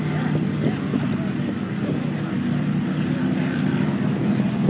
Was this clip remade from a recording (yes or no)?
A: no